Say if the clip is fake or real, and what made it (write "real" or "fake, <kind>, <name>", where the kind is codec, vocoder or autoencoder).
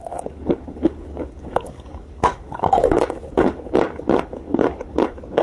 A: fake, codec, DAC